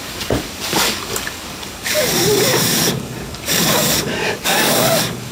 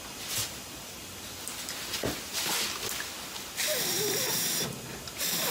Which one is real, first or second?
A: second